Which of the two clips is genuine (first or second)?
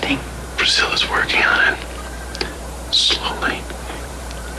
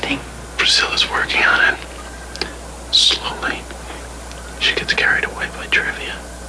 second